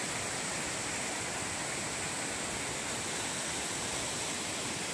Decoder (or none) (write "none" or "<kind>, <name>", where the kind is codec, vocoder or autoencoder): none